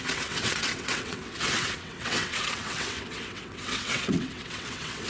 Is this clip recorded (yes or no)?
no